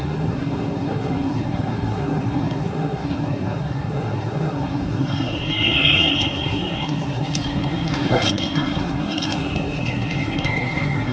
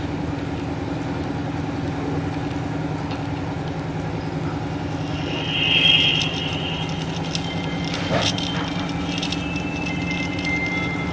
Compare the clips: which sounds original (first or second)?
second